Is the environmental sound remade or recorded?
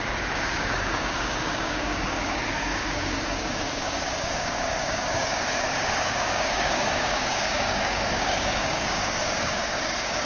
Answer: remade